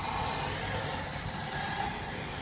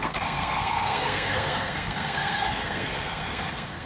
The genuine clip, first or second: first